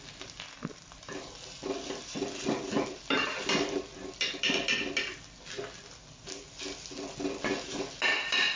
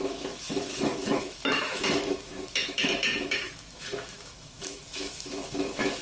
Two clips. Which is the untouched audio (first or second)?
first